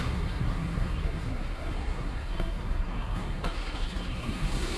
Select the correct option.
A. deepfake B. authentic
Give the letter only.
A